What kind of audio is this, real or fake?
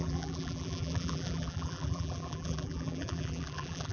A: fake